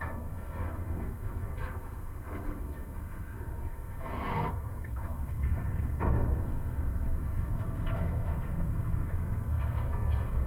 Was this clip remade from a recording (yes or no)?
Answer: yes